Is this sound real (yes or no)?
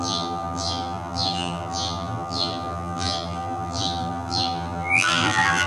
no